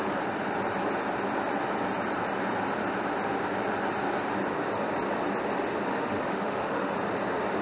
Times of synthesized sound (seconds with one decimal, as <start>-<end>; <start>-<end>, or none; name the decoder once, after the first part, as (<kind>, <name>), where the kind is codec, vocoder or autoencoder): 5.9-6.9 (autoencoder, DAC-VAE)